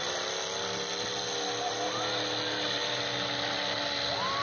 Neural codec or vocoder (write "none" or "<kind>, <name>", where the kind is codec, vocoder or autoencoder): none